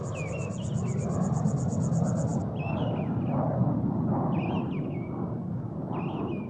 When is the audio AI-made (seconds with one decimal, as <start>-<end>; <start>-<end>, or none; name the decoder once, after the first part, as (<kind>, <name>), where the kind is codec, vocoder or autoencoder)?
none